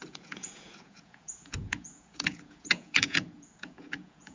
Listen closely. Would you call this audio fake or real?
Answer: fake